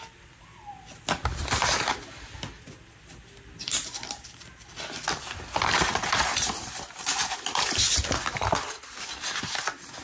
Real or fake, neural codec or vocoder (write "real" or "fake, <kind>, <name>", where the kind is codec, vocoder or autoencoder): real